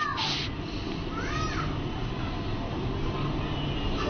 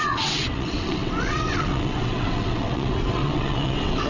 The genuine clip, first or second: first